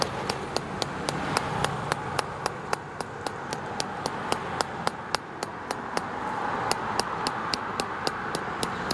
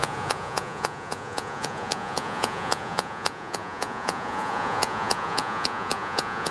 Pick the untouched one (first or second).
first